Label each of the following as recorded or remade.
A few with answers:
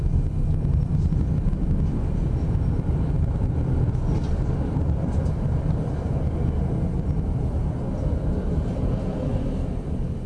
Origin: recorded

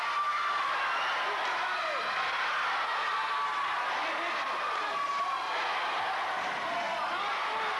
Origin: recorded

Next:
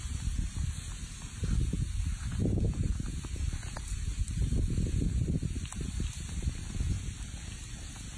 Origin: recorded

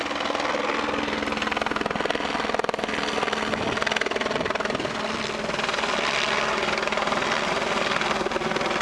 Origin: recorded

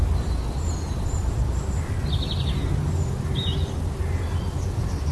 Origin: recorded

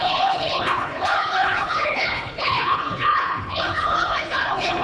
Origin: remade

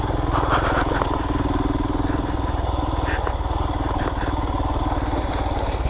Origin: recorded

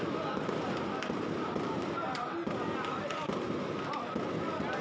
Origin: recorded